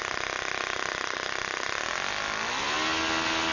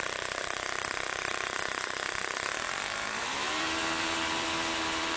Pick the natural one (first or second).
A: first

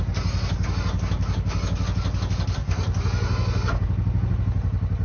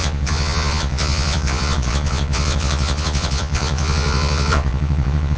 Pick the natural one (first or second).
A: first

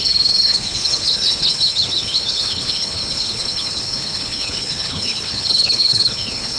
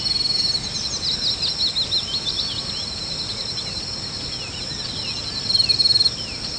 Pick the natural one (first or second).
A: second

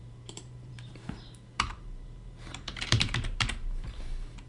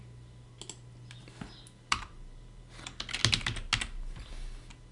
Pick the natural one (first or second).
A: second